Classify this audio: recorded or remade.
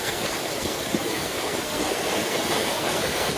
remade